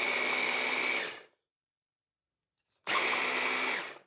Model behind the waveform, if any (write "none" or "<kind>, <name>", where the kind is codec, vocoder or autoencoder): none